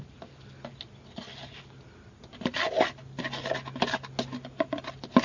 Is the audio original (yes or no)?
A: yes